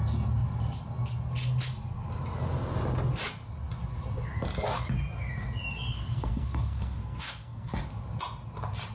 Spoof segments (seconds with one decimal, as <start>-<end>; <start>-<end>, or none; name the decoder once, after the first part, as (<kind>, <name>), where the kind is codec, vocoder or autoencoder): 5.9-7.8 (codec, SNAC)

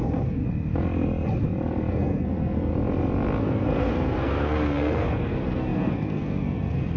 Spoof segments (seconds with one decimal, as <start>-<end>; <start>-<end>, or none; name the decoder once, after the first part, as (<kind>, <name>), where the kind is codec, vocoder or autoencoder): 0.0-0.4 (codec, SNAC); 1.9-2.7; 3.4-7.0

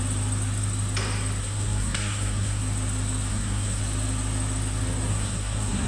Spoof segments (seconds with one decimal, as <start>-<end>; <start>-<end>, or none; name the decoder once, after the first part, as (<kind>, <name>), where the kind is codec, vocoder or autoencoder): 1.4-2.6 (codec, SNAC); 3.3-3.8; 5.1-5.9

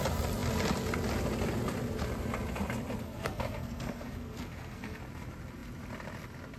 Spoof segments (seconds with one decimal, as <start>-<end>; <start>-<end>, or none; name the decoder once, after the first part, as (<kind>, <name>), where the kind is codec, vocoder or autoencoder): 3.0-5.0 (codec, SNAC)

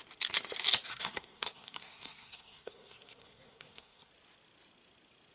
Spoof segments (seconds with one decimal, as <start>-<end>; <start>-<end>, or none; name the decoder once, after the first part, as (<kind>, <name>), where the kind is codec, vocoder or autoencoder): 0.9-4.1 (codec, SNAC)

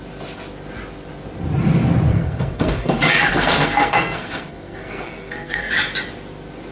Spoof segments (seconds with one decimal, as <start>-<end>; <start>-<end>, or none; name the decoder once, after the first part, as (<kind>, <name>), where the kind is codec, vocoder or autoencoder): 2.1-2.9 (codec, SNAC); 3.3-5.7

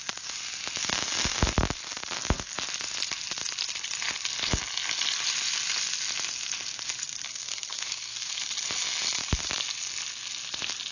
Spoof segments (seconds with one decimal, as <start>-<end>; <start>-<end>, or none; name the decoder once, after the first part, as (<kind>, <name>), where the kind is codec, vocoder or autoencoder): 7.3-8.4 (codec, SNAC)